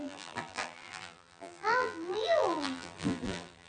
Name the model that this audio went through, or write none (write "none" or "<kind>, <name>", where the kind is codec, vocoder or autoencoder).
vocoder, BigVGAN v2